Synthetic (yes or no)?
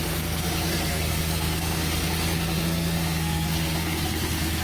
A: yes